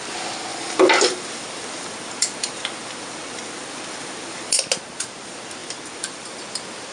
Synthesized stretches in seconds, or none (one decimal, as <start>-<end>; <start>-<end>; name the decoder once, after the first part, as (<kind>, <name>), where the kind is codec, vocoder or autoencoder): 0.5-4.6 (vocoder, BigVGAN v2); 5.6-6.4